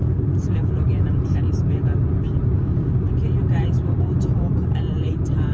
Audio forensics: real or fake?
real